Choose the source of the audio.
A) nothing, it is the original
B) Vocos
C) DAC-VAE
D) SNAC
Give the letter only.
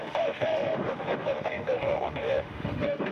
C